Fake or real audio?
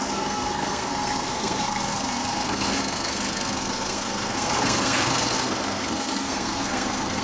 fake